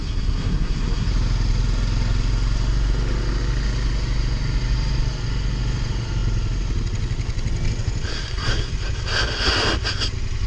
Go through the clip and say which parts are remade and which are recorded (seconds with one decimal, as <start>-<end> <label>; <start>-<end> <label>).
0.0-1.1 remade; 1.1-8.1 recorded; 8.1-8.7 remade; 8.7-10.5 recorded